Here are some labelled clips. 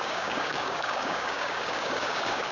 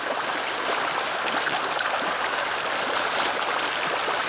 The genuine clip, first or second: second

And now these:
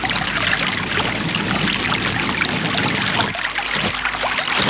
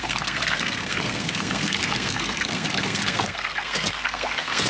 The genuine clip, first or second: first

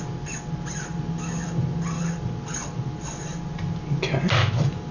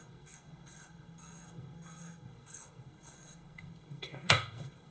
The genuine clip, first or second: first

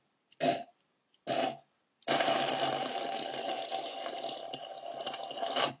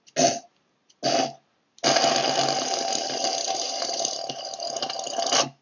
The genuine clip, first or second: second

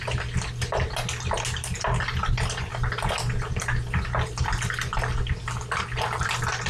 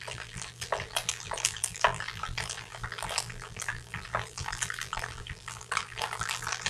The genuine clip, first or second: first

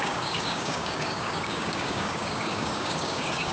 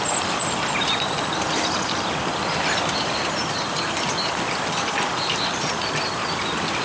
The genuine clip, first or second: second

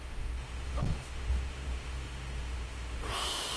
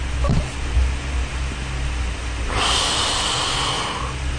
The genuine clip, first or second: second